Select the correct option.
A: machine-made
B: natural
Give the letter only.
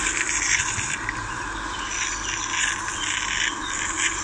B